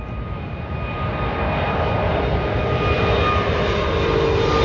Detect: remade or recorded recorded